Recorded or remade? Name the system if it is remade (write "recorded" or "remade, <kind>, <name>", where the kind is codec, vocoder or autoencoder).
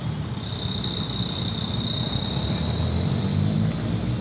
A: remade, vocoder, BigVGAN v2